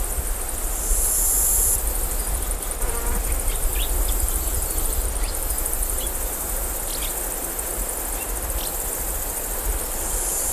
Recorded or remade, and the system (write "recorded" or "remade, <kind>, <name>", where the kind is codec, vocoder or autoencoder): remade, vocoder, BigVGAN v2